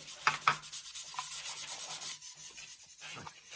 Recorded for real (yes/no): yes